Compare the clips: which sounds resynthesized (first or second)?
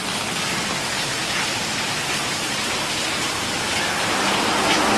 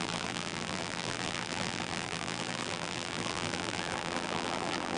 second